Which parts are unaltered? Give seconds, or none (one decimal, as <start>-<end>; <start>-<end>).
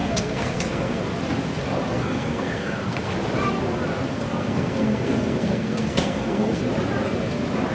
1.0-1.9; 3.1-4.1; 6.6-7.7